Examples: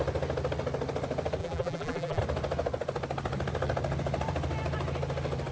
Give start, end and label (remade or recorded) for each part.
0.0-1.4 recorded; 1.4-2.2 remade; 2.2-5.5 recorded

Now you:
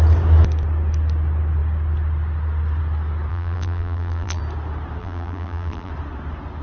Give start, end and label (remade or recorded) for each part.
0.0-3.3 recorded; 3.3-4.4 remade; 4.4-5.0 recorded; 5.0-5.9 remade; 5.9-6.6 recorded

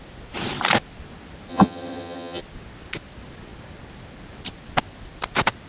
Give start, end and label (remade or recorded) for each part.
0.0-1.5 recorded; 1.5-2.4 remade; 2.4-5.7 recorded

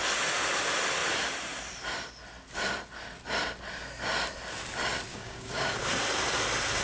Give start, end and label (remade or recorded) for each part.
0.0-5.1 recorded; 5.1-5.9 remade; 5.9-6.8 recorded

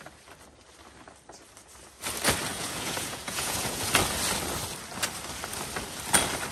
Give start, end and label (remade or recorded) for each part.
0.0-2.5 recorded; 2.5-3.9 remade; 3.9-6.5 recorded